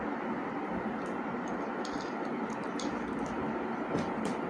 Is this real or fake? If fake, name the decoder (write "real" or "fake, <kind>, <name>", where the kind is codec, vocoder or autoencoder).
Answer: real